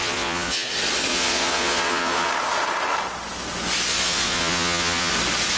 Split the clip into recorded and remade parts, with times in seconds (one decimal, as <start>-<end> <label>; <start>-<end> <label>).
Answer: 0.0-0.7 remade; 0.7-1.1 recorded; 1.1-2.3 remade; 2.3-3.9 recorded; 3.9-5.1 remade; 5.1-5.6 recorded